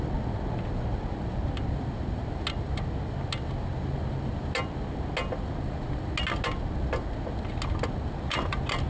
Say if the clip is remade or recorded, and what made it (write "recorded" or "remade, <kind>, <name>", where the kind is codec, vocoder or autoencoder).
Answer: recorded